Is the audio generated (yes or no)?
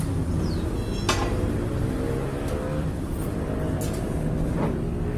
no